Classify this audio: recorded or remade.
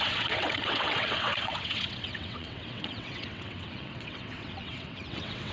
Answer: remade